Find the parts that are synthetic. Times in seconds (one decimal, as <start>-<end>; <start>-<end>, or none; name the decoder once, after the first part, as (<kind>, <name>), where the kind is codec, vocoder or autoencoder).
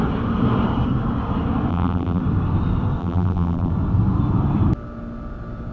1.7-2.2 (vocoder, BigVGAN v2); 3.0-3.7